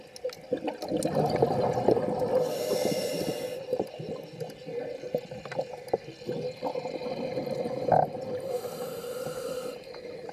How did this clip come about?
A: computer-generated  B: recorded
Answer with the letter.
B